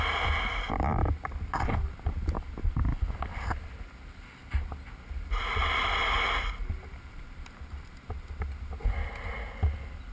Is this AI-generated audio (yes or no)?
no